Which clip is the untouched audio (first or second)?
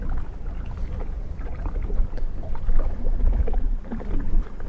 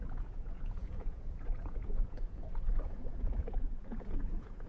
first